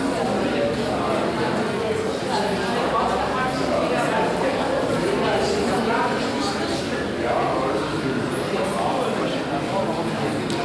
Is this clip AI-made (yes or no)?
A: no